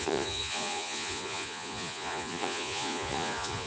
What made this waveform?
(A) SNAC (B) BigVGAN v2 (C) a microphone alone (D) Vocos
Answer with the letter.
D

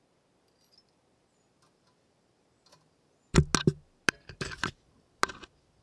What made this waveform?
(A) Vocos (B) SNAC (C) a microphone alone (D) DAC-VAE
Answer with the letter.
C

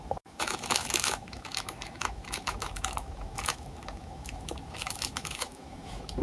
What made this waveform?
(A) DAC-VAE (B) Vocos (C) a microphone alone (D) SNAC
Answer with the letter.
A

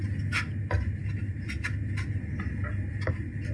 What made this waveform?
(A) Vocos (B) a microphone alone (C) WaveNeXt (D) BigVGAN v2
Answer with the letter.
B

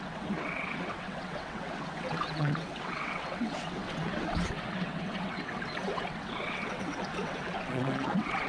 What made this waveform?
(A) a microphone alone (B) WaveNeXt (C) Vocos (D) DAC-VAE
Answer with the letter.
B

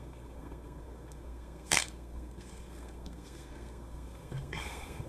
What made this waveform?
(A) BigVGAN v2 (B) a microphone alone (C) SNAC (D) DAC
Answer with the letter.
C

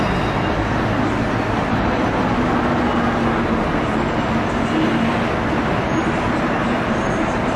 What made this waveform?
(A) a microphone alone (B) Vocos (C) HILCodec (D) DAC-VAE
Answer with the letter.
A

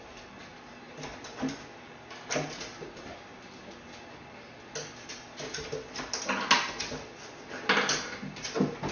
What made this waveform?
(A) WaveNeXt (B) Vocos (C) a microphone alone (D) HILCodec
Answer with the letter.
C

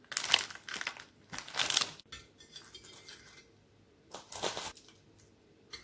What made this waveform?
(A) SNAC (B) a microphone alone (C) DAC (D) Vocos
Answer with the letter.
B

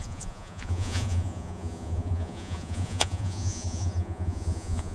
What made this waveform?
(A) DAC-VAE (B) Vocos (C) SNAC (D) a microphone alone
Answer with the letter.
B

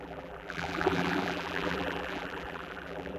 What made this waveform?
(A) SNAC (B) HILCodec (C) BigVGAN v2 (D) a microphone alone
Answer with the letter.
C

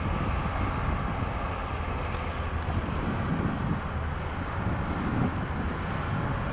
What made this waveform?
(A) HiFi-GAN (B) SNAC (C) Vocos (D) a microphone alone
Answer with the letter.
D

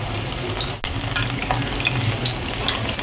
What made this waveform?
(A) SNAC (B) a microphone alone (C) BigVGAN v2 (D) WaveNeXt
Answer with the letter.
B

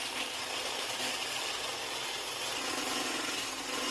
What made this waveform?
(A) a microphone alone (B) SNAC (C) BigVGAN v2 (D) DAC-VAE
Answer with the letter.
A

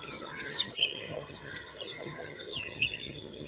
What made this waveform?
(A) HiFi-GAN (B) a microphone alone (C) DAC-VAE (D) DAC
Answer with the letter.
A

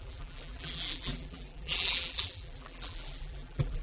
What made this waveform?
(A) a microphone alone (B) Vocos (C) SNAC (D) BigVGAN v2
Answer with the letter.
D